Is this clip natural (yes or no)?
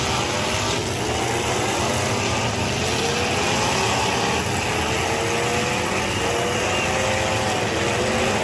yes